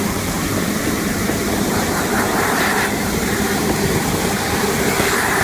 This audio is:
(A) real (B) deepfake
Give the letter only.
B